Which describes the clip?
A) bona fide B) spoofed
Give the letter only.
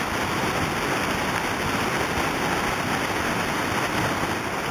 A